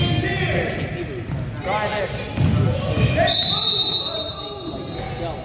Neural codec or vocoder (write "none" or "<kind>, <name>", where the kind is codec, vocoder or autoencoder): none